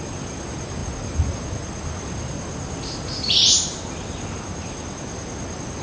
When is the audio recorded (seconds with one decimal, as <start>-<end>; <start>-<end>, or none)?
0.0-5.8